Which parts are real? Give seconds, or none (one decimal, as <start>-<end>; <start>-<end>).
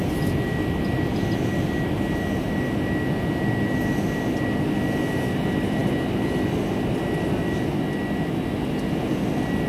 0.0-9.7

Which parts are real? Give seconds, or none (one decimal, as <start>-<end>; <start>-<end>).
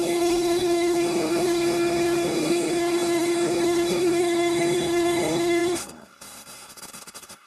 none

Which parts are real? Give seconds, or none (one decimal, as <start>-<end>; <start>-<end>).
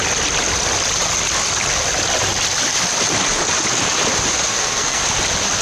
0.0-4.5; 5.0-5.6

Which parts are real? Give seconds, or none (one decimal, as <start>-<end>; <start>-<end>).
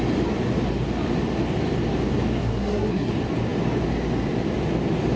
0.0-2.4; 3.1-5.2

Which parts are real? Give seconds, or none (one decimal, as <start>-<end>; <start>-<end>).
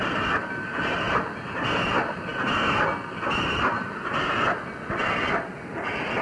0.0-6.2